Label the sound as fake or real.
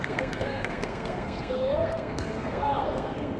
fake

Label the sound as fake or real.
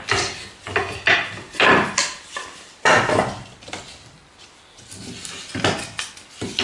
real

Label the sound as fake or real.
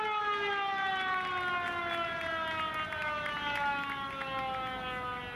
real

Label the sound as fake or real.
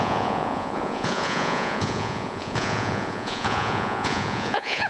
fake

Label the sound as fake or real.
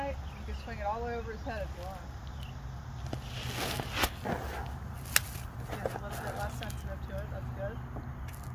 real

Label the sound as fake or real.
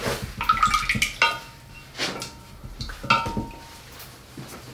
real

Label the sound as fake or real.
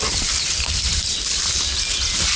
real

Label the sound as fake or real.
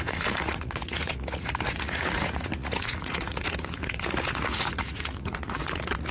fake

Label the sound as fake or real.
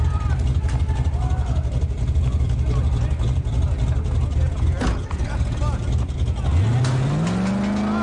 real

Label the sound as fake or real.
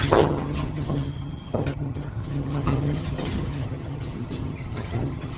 fake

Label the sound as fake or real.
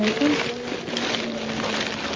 real